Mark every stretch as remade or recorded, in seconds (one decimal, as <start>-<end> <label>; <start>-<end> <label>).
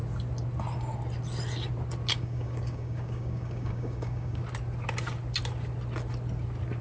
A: 0.0-2.1 recorded; 2.1-4.4 remade; 4.4-6.8 recorded